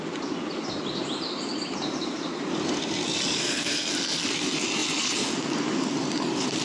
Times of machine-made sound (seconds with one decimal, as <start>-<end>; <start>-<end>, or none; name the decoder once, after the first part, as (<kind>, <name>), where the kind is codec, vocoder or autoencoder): 3.4-3.9 (codec, SNAC)

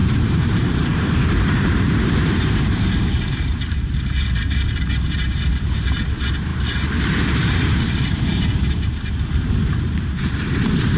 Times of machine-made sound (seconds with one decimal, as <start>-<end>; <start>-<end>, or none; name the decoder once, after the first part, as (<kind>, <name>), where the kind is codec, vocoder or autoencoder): 0.0-11.0 (vocoder, BigVGAN v2)

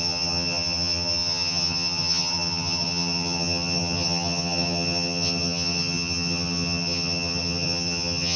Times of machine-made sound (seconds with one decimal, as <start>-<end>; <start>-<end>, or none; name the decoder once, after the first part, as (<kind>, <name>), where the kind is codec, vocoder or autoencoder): 0.0-8.4 (vocoder, HiFi-GAN)

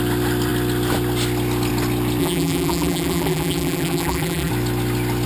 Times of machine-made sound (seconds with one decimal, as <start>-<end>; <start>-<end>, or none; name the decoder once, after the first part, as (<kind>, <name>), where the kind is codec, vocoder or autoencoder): 2.2-4.5 (vocoder, BigVGAN v2)